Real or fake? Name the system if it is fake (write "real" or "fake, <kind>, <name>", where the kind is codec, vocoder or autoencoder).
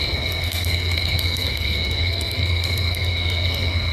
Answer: fake, codec, SNAC